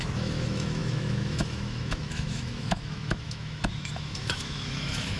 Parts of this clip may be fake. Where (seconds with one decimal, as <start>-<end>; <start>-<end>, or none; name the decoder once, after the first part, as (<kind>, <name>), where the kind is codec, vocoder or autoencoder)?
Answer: 0.0-5.2 (autoencoder, DAC-VAE)